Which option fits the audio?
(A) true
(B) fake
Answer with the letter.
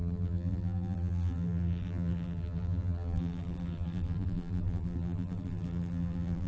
B